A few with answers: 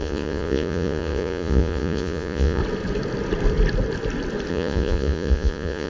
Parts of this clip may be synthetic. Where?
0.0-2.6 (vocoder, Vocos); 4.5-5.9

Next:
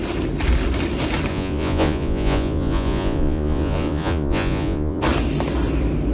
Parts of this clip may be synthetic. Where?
1.3-5.0 (vocoder, Vocos)

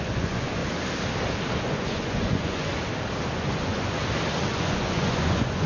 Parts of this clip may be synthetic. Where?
0.0-0.6 (vocoder, Vocos); 1.6-2.7; 3.3-4.0; 4.5-5.7